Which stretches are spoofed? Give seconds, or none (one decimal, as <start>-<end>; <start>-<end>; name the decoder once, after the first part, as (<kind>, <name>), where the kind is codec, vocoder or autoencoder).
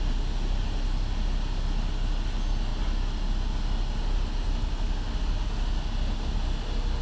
none